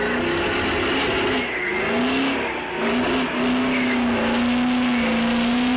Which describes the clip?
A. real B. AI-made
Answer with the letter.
A